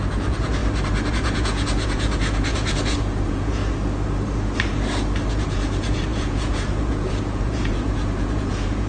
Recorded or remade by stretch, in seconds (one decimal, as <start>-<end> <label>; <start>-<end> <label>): 0.0-0.6 remade; 0.6-1.1 recorded; 1.1-3.6 remade; 3.6-5.3 recorded; 5.3-8.9 remade